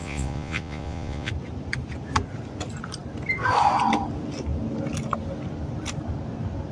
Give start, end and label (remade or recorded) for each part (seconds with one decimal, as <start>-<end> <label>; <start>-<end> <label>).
0.0-1.3 remade; 1.3-6.7 recorded